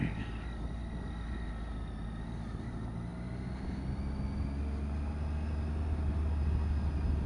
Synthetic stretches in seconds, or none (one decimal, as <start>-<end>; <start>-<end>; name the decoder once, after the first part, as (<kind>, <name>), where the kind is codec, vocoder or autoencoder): none